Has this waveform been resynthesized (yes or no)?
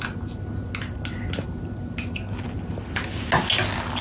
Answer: no